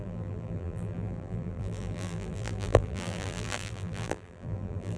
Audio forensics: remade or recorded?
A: remade